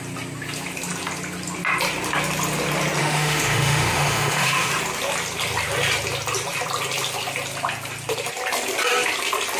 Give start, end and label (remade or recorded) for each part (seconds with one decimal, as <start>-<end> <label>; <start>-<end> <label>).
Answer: 0.0-3.0 recorded; 3.0-4.7 remade; 4.7-9.6 recorded